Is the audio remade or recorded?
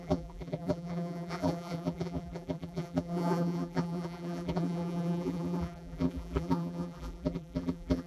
remade